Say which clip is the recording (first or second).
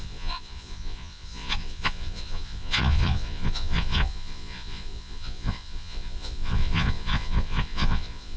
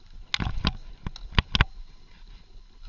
second